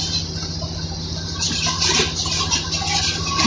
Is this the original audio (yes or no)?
yes